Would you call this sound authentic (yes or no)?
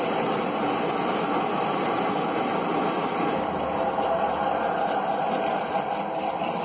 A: yes